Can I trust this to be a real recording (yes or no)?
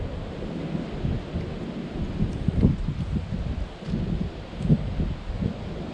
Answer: yes